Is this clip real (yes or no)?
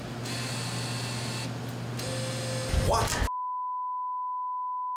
yes